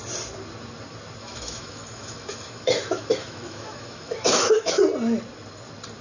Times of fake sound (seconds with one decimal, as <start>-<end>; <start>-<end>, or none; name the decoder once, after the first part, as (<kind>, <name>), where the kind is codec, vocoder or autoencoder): 1.2-4.8 (autoencoder, DAC-VAE)